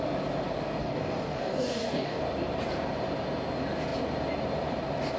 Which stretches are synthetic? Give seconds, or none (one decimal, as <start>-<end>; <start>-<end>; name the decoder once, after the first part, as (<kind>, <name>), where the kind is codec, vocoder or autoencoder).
0.8-2.2 (codec, DAC)